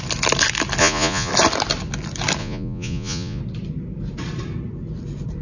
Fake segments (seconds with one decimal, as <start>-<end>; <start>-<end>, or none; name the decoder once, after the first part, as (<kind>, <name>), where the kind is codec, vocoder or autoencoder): 0.8-1.3 (vocoder, Vocos); 2.4-3.4